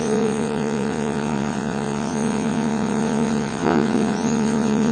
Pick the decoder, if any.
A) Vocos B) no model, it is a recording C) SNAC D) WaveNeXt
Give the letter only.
D